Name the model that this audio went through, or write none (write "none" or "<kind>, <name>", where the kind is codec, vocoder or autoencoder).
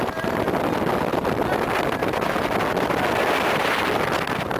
none